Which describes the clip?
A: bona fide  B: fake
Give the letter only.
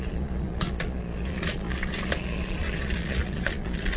B